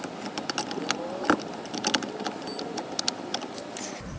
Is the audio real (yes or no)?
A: yes